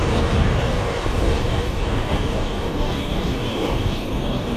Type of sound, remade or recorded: remade